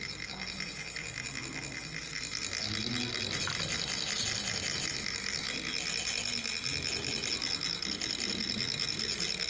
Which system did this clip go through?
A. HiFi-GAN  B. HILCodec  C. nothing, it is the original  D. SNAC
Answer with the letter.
C